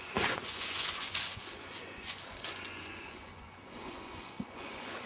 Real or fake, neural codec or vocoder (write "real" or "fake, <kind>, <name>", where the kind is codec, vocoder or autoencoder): fake, vocoder, Vocos